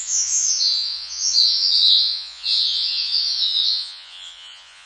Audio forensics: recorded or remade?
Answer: remade